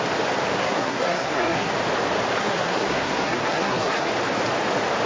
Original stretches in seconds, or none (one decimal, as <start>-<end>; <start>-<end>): 0.0-0.6; 1.7-2.4; 4.1-5.1